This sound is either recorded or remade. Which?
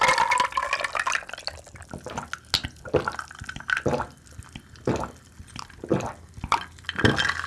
recorded